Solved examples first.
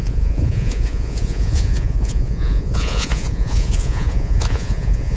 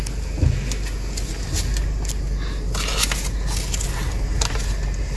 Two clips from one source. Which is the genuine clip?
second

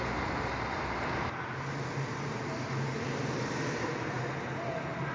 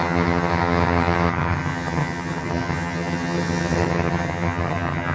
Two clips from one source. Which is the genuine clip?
first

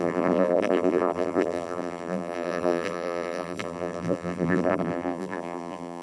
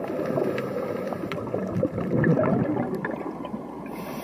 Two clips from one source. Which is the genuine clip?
second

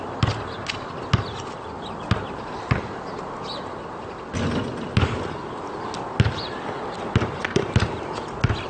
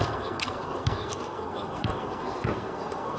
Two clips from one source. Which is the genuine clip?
first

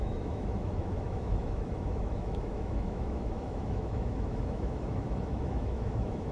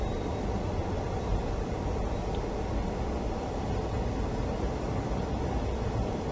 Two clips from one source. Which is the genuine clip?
second